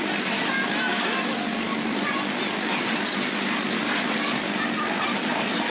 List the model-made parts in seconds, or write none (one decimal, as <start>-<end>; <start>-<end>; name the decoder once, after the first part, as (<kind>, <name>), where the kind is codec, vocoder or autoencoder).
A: none